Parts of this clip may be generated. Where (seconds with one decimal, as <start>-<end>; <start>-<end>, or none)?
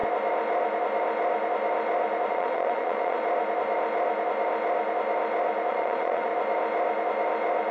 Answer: 2.3-3.2; 5.7-6.3